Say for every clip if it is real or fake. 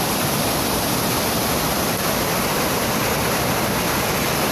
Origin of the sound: fake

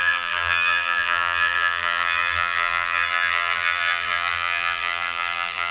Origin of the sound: fake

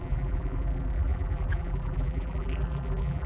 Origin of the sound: fake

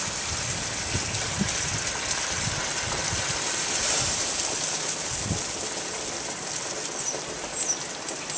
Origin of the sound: real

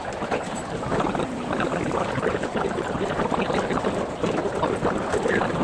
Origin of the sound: real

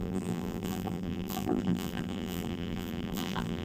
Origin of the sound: fake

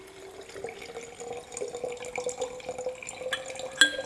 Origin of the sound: real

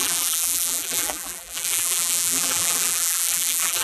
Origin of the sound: fake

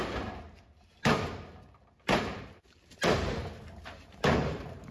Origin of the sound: fake